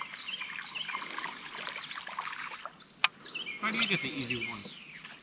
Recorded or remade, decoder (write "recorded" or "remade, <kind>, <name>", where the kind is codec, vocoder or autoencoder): recorded